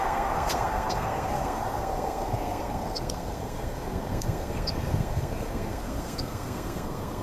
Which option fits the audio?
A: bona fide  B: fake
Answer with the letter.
B